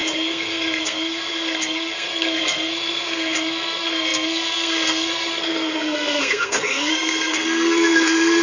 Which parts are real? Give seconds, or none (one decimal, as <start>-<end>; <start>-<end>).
none